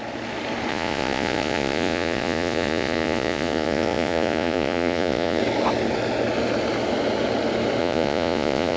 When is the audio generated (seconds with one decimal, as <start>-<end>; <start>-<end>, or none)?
0.7-5.4; 7.8-8.8